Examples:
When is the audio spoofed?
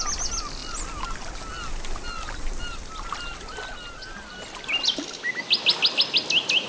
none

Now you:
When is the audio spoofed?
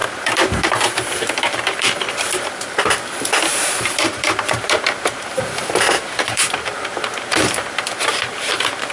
0.0-2.5 (vocoder, BigVGAN v2); 3.5-8.9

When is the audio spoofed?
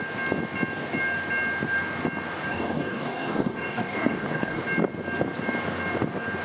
2.5-4.6 (codec, DAC)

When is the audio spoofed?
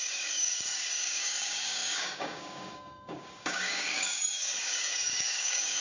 0.0-5.8 (codec, DAC)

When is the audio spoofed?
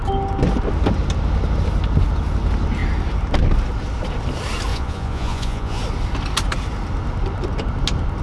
4.7-5.8 (vocoder, Vocos)